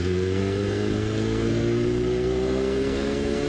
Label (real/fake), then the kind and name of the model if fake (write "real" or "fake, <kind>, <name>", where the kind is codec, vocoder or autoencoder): fake, codec, SNAC